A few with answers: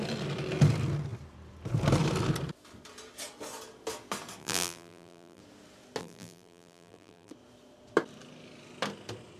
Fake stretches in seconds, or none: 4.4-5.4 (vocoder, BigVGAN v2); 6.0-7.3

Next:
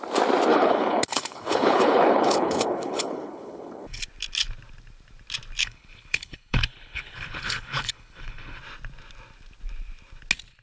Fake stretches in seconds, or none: 0.5-4.0 (codec, HILCodec); 5.6-8.6

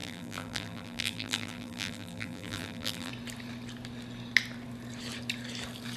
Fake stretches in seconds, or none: 0.0-3.1 (vocoder, BigVGAN v2)

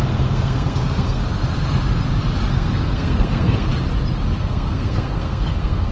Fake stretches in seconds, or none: 0.0-1.2 (codec, SNAC); 2.5-3.7; 4.4-5.9

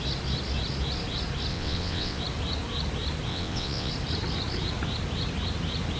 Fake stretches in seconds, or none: 1.5-2.2 (vocoder, WaveNeXt); 3.3-3.9